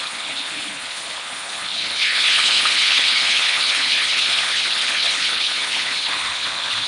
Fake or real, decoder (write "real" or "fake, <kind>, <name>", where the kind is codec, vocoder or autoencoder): fake, codec, HILCodec